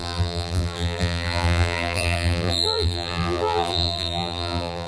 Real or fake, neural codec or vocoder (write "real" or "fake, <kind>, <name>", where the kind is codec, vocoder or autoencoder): fake, vocoder, BigVGAN v2